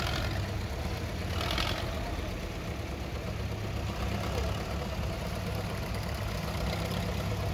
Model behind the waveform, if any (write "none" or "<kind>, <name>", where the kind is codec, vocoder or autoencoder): none